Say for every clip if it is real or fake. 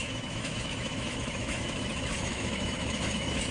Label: fake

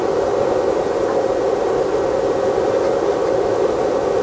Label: real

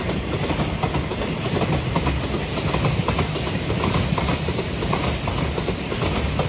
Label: real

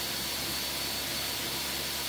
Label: real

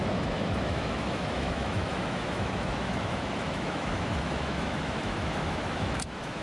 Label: fake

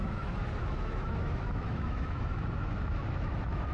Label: fake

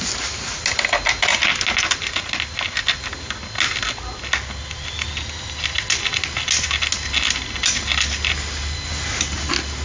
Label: real